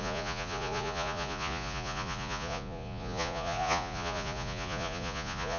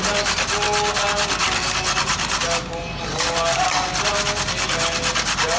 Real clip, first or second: second